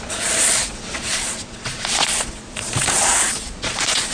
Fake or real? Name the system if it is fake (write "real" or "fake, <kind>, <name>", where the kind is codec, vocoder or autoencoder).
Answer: fake, vocoder, Vocos